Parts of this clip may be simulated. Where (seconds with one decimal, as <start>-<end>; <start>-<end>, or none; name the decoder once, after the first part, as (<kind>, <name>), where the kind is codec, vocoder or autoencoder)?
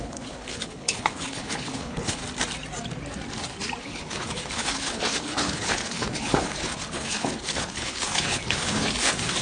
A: 0.0-2.2 (codec, HILCodec); 3.8-9.4